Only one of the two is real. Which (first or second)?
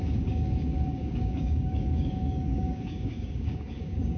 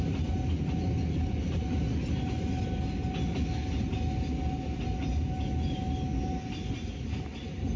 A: second